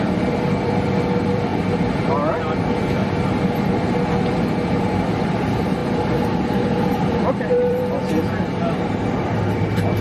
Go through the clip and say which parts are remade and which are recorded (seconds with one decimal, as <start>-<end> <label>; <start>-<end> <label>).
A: 0.0-1.5 remade; 1.5-4.8 recorded; 4.8-5.8 remade; 5.8-7.1 recorded; 7.1-8.0 remade; 8.0-9.2 recorded; 9.2-10.0 remade